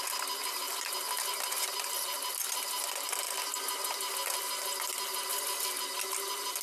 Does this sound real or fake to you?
real